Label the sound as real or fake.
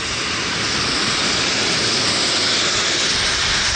real